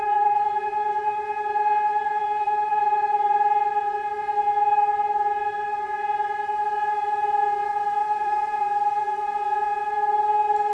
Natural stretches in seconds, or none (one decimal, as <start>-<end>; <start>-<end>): 0.0-1.9; 2.8-8.0; 8.6-10.7